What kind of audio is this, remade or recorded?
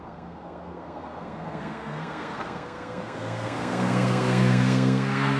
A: remade